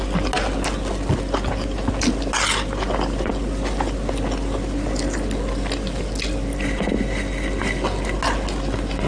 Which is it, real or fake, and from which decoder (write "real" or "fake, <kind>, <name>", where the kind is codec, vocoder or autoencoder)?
real